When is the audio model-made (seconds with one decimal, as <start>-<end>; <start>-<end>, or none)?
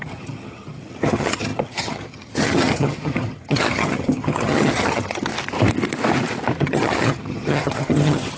0.0-5.3; 6.6-8.4